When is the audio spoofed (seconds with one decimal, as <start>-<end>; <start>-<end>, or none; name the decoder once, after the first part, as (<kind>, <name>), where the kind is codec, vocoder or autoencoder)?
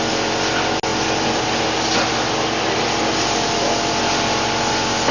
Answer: none